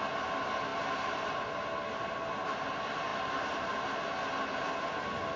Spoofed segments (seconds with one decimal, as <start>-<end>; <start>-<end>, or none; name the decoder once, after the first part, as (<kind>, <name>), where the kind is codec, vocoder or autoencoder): none